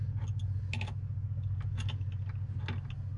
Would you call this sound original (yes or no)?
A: yes